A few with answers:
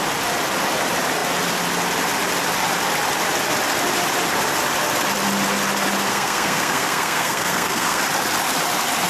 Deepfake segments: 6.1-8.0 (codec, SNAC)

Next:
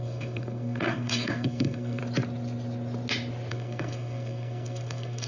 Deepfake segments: 0.0-2.0 (codec, SNAC); 3.5-5.3

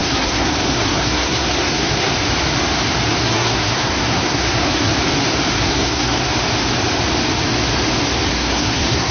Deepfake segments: 0.0-2.1 (codec, SNAC); 3.2-4.9; 5.6-6.3; 8.3-9.1

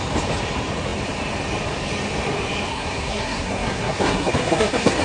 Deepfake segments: 2.7-5.0 (codec, SNAC)